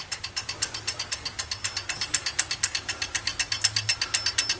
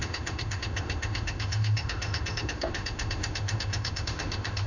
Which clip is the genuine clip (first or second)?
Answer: first